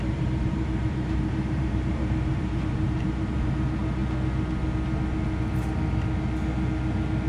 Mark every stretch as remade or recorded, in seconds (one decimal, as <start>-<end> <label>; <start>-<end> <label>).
0.0-4.0 remade; 4.0-7.3 recorded